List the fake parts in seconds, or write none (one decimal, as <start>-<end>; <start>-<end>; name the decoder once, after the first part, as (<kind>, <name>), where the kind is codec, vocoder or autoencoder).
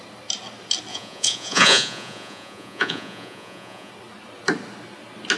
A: 0.9-3.9 (vocoder, Vocos)